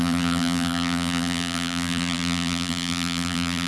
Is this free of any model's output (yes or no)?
no